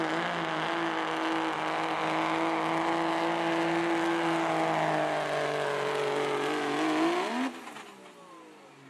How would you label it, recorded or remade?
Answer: recorded